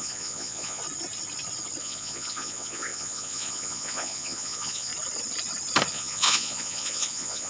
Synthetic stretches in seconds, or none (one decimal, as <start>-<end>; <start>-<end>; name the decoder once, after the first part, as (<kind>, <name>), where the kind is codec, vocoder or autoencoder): 0.0-0.8 (vocoder, Vocos); 1.8-4.9; 5.9-7.5

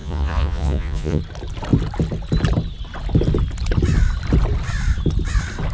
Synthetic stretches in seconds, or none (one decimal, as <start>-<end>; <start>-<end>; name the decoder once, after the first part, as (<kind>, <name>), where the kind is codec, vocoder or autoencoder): 0.0-1.2 (vocoder, Vocos)

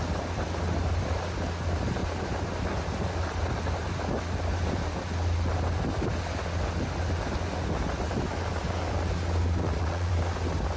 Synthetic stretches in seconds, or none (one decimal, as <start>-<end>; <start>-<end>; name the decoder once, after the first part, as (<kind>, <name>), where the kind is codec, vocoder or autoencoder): 9.6-10.1 (vocoder, Vocos)

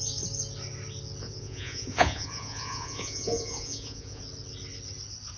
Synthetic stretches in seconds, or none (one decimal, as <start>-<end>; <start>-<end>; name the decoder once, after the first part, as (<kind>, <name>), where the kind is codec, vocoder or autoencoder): 1.2-4.2 (vocoder, Vocos)

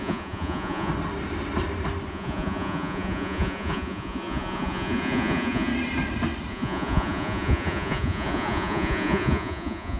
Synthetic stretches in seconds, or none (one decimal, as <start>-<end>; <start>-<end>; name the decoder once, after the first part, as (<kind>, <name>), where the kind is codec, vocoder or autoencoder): 0.0-0.9 (vocoder, Vocos); 2.1-5.7; 6.5-10.0

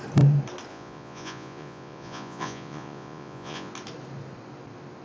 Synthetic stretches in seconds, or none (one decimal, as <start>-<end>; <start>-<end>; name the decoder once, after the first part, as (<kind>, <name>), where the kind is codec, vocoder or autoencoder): 0.7-3.7 (vocoder, Vocos)

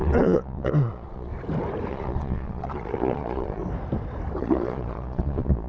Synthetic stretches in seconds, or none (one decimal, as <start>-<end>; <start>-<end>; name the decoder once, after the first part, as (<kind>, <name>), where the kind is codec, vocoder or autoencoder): 0.0-1.3 (vocoder, Vocos); 1.9-3.6; 4.4-5.7